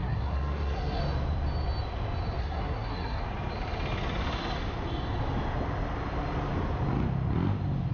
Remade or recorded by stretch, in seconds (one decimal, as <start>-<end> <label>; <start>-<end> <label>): 0.0-1.0 remade; 1.0-2.4 recorded; 2.4-3.2 remade; 3.2-7.9 recorded